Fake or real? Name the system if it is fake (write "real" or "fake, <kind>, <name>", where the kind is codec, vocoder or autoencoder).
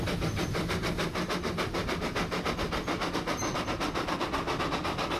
real